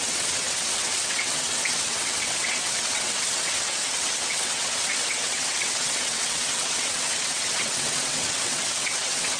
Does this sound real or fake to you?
fake